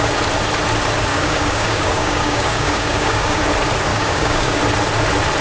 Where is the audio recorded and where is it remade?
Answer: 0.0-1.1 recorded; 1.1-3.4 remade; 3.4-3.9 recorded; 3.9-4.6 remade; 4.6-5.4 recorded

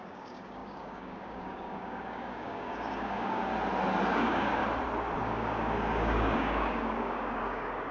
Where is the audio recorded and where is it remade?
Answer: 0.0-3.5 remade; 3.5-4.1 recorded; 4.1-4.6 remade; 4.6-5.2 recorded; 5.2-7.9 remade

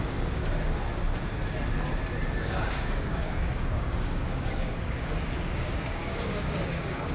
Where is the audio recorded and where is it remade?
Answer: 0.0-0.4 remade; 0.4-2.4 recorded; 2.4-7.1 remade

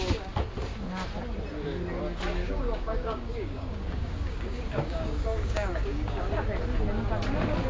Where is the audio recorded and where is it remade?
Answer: 0.0-2.4 recorded; 2.4-6.2 remade; 6.2-7.7 recorded

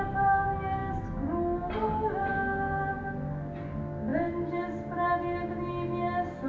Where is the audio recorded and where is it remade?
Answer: 0.0-6.5 recorded

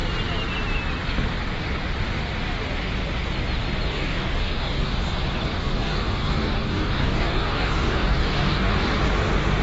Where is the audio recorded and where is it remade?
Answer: 0.0-3.9 recorded; 3.9-4.9 remade; 4.9-5.6 recorded; 5.6-8.7 remade; 8.7-9.6 recorded

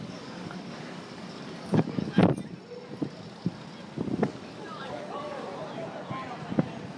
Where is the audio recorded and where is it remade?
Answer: 0.0-2.2 remade; 2.2-4.2 recorded; 4.2-5.5 remade; 5.5-7.0 recorded

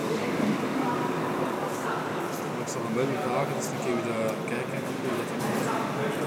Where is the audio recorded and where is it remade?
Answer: 0.0-2.3 remade; 2.3-6.3 recorded